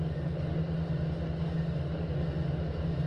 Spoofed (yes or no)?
no